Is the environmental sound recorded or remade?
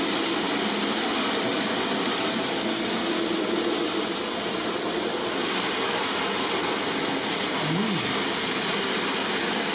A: recorded